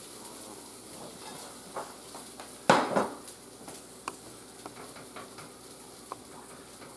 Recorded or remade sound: recorded